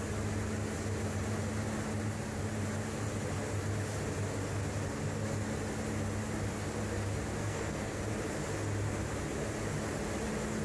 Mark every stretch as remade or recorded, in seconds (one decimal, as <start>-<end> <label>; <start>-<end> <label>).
0.0-7.4 recorded; 7.4-8.0 remade; 8.0-10.6 recorded